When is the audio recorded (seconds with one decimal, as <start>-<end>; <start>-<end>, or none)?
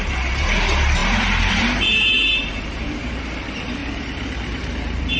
0.0-1.0; 3.2-3.8